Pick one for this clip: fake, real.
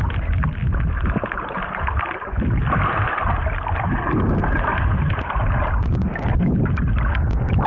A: real